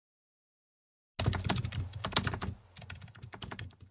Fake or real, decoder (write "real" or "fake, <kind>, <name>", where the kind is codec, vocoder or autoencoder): real